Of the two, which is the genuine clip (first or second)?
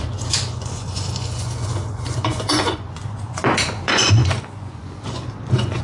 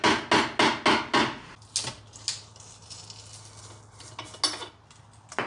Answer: second